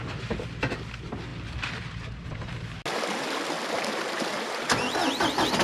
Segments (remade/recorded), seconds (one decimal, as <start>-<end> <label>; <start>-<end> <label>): 0.0-5.6 recorded